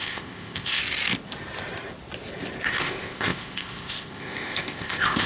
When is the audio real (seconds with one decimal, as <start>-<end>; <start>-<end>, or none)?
0.8-2.7